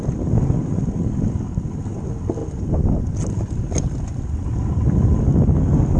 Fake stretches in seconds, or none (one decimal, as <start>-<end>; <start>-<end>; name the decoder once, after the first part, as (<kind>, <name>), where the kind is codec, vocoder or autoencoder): none